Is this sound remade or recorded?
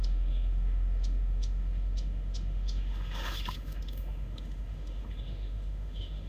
remade